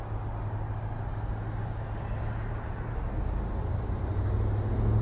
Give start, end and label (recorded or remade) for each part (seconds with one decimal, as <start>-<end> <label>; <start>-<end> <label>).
0.0-5.0 recorded